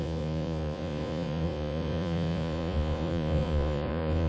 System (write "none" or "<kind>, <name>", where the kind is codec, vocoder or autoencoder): vocoder, Vocos